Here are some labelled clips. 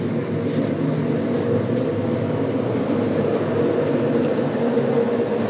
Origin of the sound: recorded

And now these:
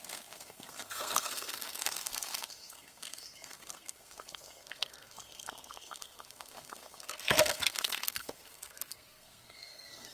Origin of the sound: remade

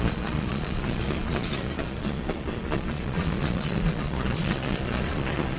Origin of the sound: remade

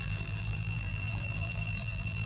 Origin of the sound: remade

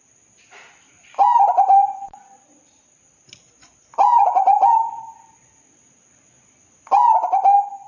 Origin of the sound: recorded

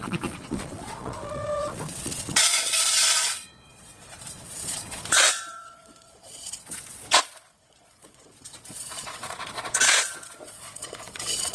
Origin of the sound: remade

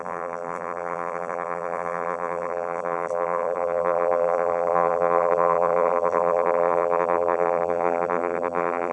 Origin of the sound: remade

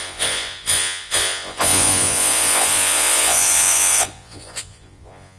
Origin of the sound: remade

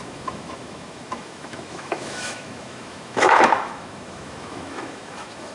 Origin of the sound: remade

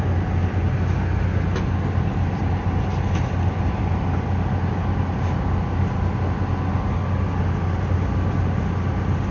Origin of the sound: recorded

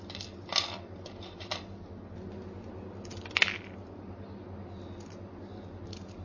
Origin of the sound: recorded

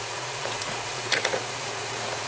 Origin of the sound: remade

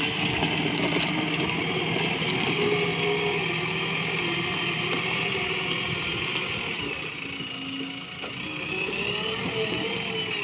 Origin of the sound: recorded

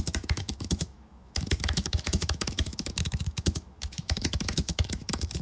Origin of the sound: remade